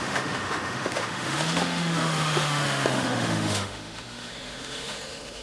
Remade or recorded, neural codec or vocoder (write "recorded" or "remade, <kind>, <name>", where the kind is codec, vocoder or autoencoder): remade, autoencoder, DAC-VAE